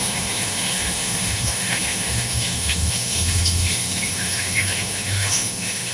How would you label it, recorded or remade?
remade